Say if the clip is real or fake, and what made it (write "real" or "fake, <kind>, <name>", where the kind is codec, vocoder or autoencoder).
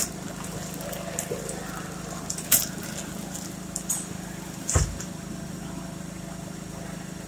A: real